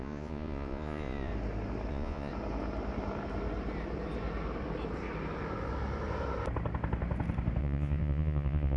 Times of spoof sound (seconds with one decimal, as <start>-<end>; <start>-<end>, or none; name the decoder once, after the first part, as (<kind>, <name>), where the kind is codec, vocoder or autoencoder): 0.0-1.3 (vocoder, Vocos); 1.9-2.3; 7.6-8.8